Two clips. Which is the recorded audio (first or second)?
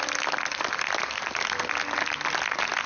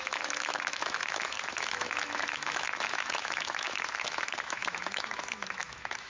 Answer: first